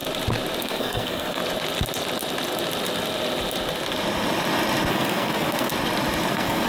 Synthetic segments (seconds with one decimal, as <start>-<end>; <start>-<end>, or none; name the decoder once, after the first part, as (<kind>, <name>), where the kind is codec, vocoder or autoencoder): 0.6-1.4 (codec, SNAC); 4.9-5.7; 6.3-6.7